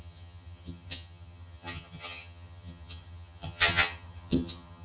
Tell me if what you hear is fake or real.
fake